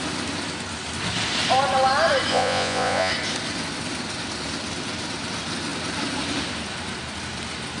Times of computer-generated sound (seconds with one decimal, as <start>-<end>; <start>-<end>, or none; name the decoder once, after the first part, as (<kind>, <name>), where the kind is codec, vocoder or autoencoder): 2.3-3.1 (vocoder, Vocos)